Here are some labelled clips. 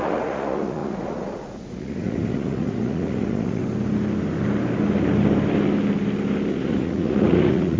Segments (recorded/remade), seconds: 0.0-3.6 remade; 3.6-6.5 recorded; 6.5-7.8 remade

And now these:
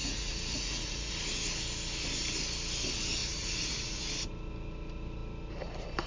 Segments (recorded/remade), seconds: 0.0-1.1 remade; 1.1-3.2 recorded; 3.2-4.0 remade; 4.0-6.1 recorded